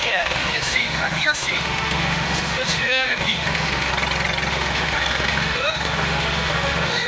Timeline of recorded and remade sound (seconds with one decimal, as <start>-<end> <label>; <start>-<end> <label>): 0.0-3.9 remade; 3.9-4.5 recorded; 4.5-7.1 remade